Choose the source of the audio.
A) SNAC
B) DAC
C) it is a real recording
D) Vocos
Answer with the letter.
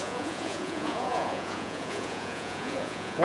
D